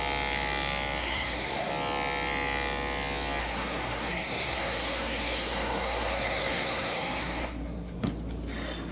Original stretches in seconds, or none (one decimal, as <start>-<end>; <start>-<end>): 0.0-1.0; 1.7-3.4; 8.1-8.9